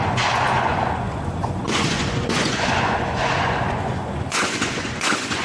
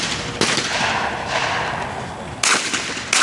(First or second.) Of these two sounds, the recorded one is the second